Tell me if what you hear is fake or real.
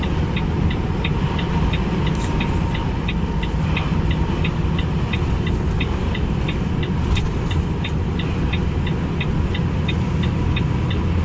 real